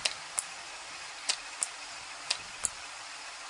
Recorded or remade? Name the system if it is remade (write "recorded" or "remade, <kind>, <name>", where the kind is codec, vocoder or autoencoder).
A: recorded